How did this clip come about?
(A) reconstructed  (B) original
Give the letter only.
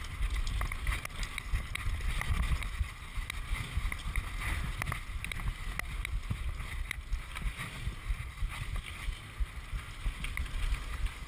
B